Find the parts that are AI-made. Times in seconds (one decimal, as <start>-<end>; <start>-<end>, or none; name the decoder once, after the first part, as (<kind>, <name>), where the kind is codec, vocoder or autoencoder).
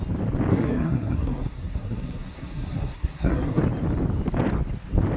0.5-3.6 (codec, SNAC)